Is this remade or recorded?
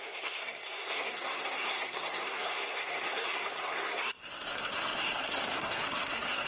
remade